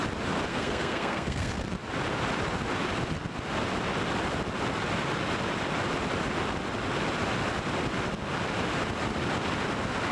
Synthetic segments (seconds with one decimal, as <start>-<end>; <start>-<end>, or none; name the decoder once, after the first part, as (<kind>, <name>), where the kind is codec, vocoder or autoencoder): 0.5-1.5 (codec, SNAC)